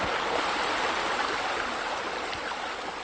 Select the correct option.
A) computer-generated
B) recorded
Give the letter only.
B